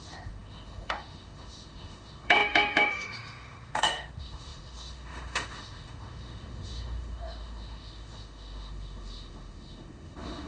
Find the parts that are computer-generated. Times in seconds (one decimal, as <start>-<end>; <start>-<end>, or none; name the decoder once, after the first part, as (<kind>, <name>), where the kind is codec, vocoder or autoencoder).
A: 0.0-10.5 (autoencoder, DAC-VAE)